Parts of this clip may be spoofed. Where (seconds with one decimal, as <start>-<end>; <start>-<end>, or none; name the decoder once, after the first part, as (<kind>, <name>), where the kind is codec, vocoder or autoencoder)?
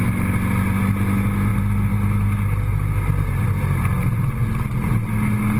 none